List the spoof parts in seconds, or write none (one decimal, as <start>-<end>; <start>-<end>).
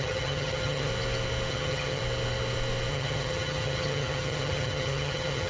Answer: 0.0-0.9; 1.5-2.0; 2.9-5.5